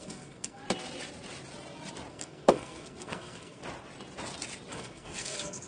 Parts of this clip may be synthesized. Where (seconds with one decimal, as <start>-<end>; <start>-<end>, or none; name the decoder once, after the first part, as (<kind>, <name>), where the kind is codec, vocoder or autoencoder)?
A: 0.0-0.6 (codec, SNAC); 2.1-3.6; 4.7-5.7